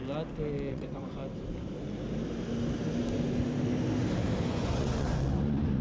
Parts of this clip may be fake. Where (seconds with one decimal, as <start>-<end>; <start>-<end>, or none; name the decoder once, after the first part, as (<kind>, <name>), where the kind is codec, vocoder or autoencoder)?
0.7-1.2 (vocoder, Vocos); 4.4-5.8